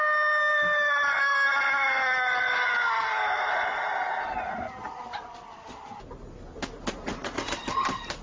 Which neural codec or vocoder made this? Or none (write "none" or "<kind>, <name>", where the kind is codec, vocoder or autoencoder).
none